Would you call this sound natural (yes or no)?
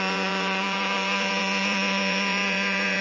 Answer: no